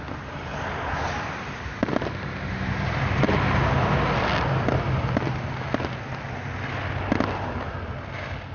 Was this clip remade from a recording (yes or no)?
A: no